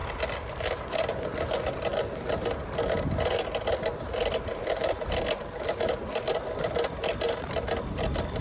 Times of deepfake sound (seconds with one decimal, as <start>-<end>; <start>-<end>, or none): none